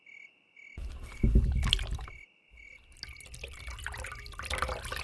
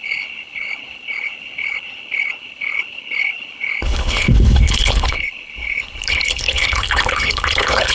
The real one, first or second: first